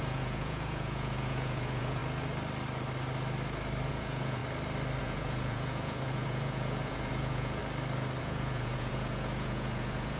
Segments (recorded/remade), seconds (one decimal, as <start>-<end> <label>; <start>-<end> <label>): 0.0-2.0 remade; 2.0-3.9 recorded; 3.9-4.4 remade; 4.4-5.0 recorded; 5.0-7.6 remade; 7.6-8.2 recorded; 8.2-10.2 remade